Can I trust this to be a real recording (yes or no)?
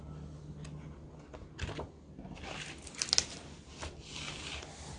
yes